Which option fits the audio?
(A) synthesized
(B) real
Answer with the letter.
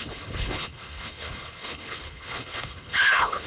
A